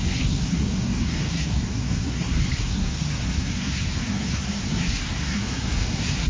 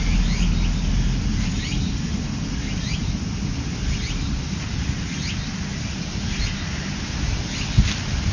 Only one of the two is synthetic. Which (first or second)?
first